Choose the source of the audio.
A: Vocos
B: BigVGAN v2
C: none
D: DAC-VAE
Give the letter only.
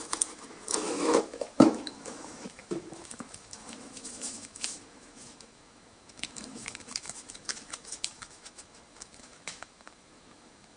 D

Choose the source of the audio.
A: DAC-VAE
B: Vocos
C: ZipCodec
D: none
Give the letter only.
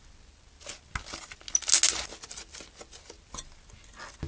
D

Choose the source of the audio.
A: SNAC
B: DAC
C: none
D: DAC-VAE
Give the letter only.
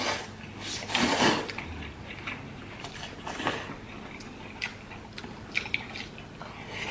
C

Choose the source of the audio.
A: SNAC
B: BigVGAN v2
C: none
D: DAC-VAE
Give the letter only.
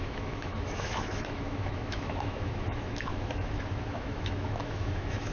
D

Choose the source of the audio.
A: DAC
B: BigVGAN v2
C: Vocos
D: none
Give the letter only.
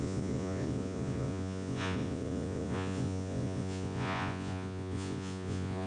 C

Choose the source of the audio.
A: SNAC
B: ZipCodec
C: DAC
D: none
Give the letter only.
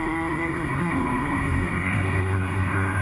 A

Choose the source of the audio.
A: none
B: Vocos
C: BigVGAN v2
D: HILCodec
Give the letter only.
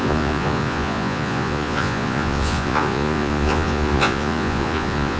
B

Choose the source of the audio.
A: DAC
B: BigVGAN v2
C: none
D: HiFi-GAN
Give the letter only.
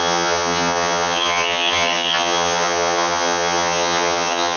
D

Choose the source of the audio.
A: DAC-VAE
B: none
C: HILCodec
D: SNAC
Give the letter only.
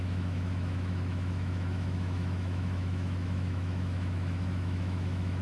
A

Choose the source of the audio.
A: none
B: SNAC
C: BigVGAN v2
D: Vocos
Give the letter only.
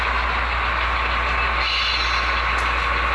A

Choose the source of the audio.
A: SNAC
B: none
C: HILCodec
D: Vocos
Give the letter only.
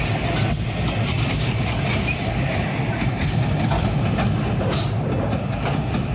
B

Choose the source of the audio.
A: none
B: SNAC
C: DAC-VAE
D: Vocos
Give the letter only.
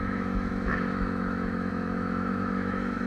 C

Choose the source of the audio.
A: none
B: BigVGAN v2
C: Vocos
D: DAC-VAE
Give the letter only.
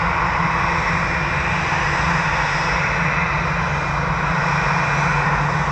A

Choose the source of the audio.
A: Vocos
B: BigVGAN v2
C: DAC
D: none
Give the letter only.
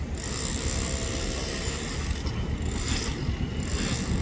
D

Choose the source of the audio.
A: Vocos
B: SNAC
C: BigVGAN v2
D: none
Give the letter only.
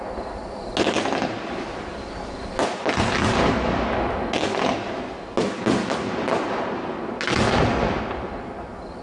D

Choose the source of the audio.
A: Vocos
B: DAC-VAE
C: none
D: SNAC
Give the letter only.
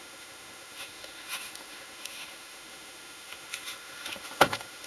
B